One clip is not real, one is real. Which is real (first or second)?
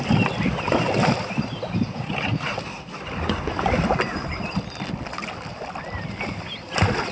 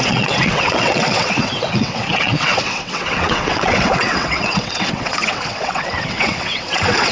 first